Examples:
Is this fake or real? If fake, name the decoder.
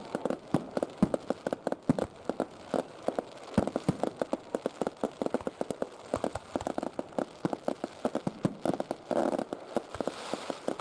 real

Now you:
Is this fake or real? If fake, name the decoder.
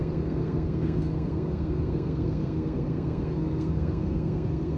fake, codec, SNAC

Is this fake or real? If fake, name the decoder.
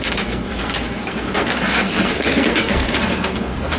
fake, codec, SNAC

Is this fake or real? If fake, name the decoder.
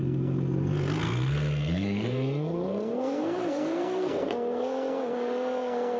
fake, codec, SNAC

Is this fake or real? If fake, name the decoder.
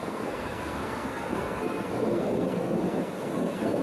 fake, codec, SNAC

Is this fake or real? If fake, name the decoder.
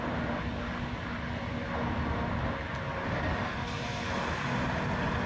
real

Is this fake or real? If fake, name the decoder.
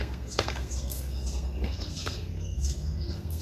fake, codec, SNAC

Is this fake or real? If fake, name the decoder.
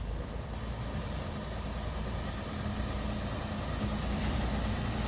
real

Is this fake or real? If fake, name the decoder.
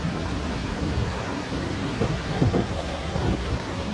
fake, codec, SNAC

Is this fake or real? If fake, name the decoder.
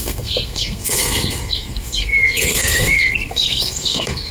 fake, codec, SNAC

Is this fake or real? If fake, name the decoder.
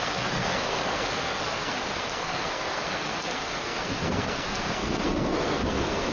fake, codec, SNAC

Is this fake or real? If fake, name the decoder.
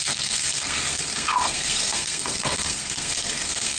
fake, codec, SNAC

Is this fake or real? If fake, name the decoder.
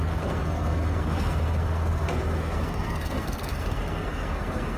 fake, codec, SNAC